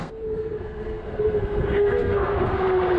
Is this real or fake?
fake